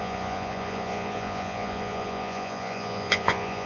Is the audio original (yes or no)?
no